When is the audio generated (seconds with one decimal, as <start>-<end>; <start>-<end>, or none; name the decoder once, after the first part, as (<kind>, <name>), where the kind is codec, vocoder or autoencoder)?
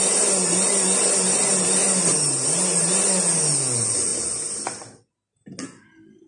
none